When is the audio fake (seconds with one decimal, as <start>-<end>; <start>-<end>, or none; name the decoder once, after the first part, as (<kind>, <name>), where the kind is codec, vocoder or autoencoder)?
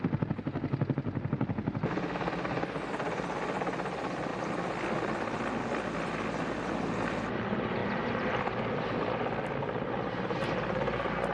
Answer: none